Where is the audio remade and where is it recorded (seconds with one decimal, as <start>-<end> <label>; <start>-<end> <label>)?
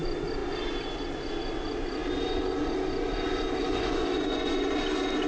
0.0-3.6 recorded; 3.6-4.7 remade; 4.7-5.3 recorded